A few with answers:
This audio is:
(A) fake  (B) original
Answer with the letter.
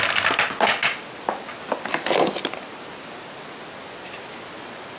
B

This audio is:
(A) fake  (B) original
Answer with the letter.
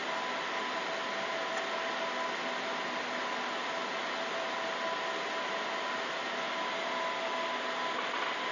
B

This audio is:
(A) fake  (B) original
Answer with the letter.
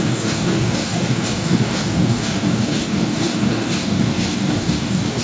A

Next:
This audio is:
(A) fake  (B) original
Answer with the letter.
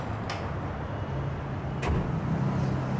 B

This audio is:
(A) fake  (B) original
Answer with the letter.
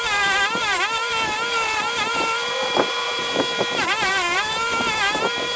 A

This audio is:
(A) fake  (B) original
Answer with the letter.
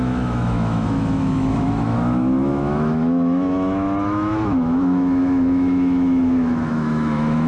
A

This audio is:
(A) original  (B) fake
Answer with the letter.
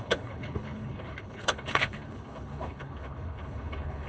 B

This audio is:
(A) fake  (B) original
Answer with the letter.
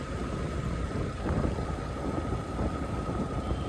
B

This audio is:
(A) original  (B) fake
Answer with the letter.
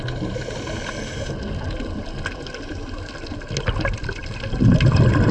A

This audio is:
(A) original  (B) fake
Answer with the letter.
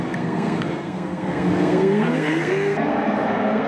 B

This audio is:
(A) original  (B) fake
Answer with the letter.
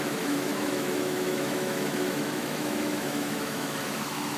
B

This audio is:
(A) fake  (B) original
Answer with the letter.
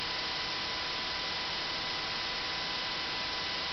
B